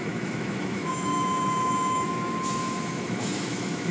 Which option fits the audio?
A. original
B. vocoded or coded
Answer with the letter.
B